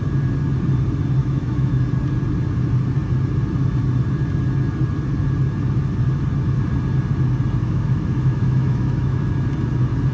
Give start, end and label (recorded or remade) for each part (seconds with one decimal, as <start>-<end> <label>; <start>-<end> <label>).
0.0-1.2 recorded; 1.2-1.8 remade; 1.8-7.6 recorded; 7.6-9.3 remade; 9.3-10.1 recorded

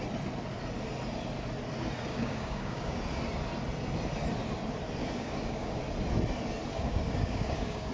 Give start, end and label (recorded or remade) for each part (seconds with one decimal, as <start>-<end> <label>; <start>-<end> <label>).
0.0-2.1 recorded; 2.1-3.0 remade; 3.0-5.0 recorded; 5.0-5.8 remade; 5.8-6.7 recorded; 6.7-7.9 remade

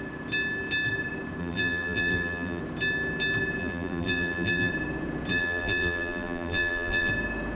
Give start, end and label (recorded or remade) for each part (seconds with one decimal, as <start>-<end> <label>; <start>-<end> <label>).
0.0-1.4 recorded; 1.4-2.6 remade; 2.6-3.6 recorded; 3.6-4.7 remade; 4.7-5.3 recorded; 5.3-7.1 remade; 7.1-7.6 recorded

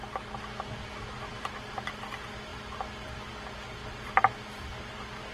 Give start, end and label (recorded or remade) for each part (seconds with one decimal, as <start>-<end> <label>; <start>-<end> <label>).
0.0-5.3 recorded

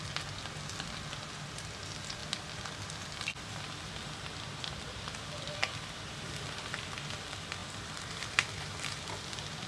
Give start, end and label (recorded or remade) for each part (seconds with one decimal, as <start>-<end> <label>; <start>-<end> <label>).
0.0-2.2 recorded; 2.2-2.9 remade; 2.9-7.6 recorded; 7.6-8.9 remade; 8.9-9.7 recorded